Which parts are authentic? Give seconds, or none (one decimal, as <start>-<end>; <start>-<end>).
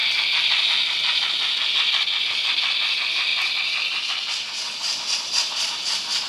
0.0-6.3